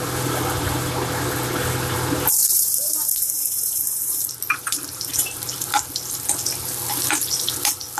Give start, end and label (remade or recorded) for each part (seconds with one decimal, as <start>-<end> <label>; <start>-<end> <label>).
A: 0.0-2.4 recorded; 2.4-5.7 remade; 5.7-8.0 recorded